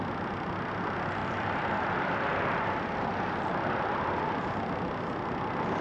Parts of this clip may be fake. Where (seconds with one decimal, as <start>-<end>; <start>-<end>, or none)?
1.2-4.2